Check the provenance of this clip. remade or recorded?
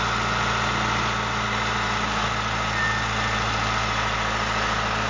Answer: recorded